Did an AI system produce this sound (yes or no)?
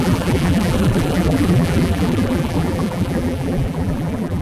yes